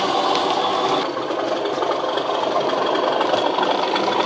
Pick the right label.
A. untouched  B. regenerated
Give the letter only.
A